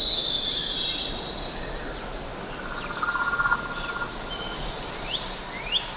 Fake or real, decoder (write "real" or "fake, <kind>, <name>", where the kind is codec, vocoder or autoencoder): real